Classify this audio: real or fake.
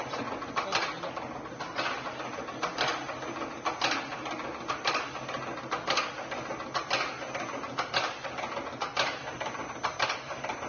real